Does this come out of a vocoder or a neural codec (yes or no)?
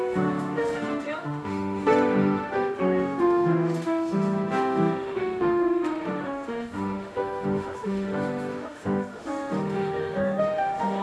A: yes